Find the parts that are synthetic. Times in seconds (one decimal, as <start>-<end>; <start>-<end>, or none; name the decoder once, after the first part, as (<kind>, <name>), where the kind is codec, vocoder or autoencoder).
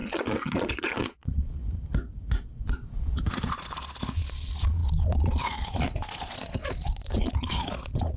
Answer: 0.0-1.6 (vocoder, Vocos); 2.4-8.2